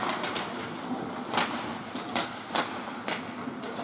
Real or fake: real